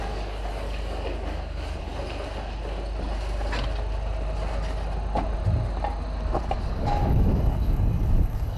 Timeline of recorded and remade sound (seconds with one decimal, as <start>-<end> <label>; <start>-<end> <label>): 0.0-1.9 remade; 1.9-6.4 recorded; 6.4-8.6 remade